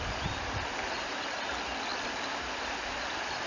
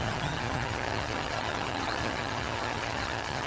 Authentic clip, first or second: first